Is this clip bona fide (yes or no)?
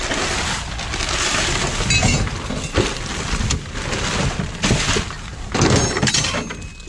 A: yes